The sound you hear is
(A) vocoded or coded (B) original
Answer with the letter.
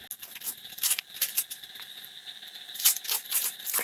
B